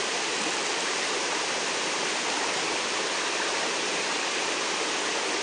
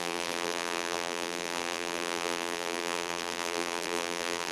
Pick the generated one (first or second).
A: second